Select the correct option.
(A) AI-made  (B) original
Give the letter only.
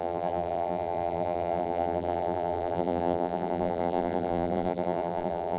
A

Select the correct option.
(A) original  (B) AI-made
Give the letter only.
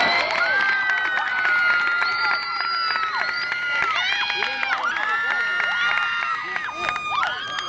A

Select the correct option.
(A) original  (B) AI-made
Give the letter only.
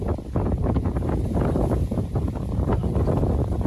B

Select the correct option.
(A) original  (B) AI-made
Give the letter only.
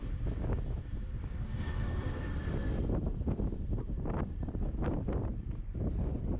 B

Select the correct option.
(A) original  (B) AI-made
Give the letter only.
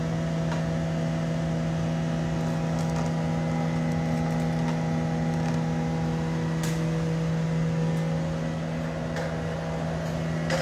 A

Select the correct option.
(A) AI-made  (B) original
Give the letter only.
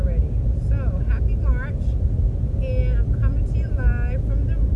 B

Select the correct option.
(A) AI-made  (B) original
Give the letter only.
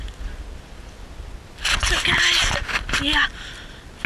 B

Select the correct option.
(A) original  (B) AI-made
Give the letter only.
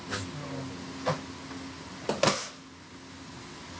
A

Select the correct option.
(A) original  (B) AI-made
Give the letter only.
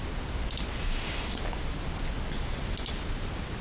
A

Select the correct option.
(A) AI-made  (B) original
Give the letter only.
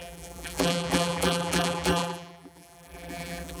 A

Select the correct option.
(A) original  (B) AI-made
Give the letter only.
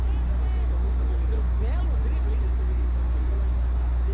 A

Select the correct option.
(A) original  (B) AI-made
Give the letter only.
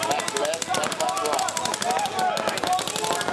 A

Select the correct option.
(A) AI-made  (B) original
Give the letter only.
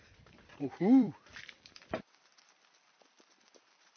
A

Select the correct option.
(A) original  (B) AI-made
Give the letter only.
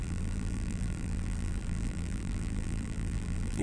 B